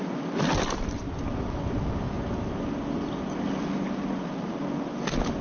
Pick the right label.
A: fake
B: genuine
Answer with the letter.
B